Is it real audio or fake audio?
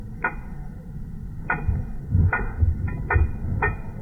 real